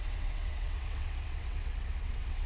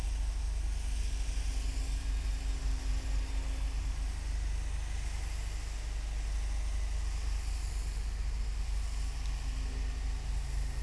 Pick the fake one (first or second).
first